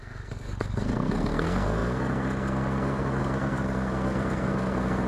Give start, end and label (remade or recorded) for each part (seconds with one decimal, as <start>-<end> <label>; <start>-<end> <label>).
0.0-5.1 remade